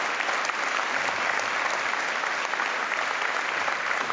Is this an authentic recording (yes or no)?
yes